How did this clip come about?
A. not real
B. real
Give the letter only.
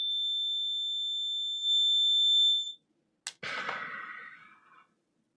B